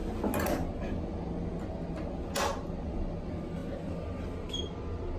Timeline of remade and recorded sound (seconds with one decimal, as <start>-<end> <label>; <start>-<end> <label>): 0.0-5.2 recorded